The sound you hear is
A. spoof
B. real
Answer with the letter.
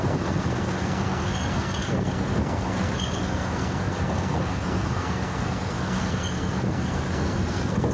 A